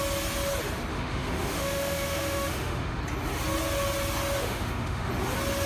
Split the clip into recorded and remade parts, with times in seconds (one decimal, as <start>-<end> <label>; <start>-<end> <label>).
0.0-0.9 recorded; 0.9-3.0 remade; 3.0-4.4 recorded; 4.4-5.1 remade; 5.1-5.7 recorded